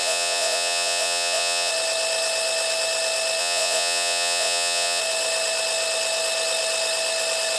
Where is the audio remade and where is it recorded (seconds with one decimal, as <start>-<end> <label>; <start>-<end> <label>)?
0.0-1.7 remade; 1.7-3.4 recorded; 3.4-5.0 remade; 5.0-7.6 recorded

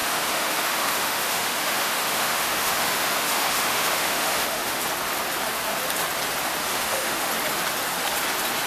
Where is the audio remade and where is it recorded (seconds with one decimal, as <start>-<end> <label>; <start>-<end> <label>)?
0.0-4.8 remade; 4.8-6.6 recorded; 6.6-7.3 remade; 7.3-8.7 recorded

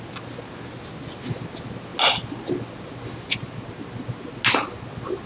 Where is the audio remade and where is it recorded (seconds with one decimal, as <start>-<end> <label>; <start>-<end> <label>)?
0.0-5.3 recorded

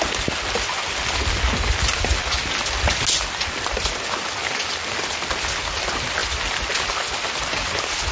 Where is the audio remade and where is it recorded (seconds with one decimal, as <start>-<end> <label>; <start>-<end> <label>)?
0.0-8.1 recorded